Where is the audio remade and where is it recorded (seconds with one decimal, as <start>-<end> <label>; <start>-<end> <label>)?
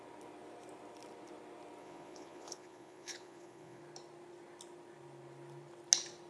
0.0-1.8 recorded; 1.8-3.8 remade; 3.8-6.3 recorded